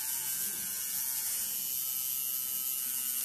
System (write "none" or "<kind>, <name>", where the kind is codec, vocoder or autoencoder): none